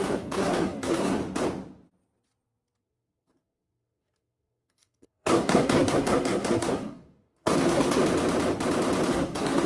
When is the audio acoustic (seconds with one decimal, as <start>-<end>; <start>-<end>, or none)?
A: 1.2-2.8; 8.0-9.1